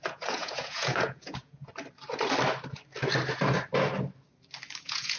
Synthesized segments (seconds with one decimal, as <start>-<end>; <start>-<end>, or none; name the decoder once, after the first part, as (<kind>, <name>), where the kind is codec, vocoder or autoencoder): 0.0-1.7 (vocoder, Vocos); 4.8-5.2

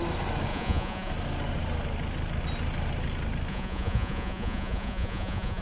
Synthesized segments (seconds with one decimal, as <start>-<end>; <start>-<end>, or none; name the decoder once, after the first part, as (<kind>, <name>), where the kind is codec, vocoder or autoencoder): 0.5-1.1 (vocoder, Vocos); 3.5-5.6

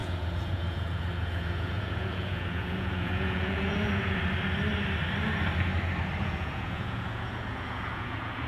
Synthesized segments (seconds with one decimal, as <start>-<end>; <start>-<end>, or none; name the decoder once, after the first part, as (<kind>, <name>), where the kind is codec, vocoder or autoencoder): 0.0-4.2 (vocoder, Vocos); 6.2-8.5

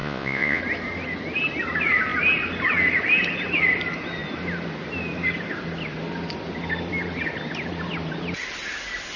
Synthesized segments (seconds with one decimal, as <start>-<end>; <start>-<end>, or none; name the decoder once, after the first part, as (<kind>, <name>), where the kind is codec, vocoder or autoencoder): 0.0-0.6 (vocoder, Vocos)

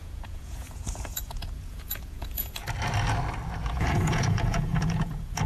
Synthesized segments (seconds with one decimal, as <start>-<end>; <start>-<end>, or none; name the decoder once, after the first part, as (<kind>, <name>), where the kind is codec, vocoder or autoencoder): 0.0-2.6 (vocoder, Vocos); 3.7-5.5

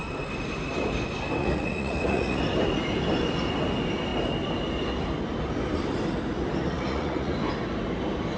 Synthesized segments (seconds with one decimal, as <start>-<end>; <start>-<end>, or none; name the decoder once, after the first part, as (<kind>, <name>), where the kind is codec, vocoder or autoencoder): 1.4-2.4 (vocoder, Vocos); 6.6-7.3